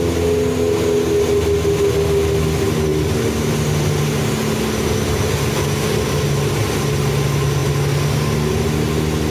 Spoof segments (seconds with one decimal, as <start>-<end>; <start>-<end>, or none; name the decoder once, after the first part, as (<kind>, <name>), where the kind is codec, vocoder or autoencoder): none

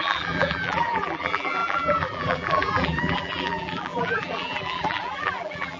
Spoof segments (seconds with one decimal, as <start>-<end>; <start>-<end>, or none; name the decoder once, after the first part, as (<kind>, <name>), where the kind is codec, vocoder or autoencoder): 0.0-5.8 (vocoder, BigVGAN v2)

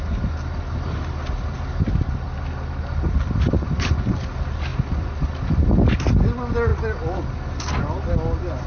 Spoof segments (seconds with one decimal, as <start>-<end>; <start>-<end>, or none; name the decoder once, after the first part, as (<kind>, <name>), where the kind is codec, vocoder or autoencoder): 4.7-5.2 (vocoder, BigVGAN v2)

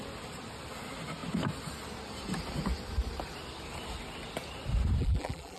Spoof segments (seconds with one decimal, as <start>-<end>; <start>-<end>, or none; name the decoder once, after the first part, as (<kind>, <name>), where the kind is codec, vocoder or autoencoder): 5.0-5.6 (vocoder, BigVGAN v2)

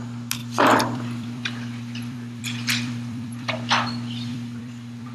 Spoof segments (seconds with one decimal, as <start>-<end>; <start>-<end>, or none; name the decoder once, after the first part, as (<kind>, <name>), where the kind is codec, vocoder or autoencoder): 0.4-3.5 (vocoder, BigVGAN v2); 4.3-5.1

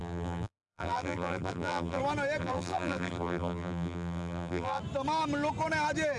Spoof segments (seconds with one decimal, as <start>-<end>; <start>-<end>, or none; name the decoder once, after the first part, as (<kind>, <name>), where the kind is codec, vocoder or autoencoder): 0.0-2.0 (vocoder, BigVGAN v2); 2.4-4.8

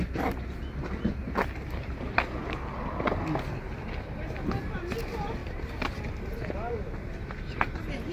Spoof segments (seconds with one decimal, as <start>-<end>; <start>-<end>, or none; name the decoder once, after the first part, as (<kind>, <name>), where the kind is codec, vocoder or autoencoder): none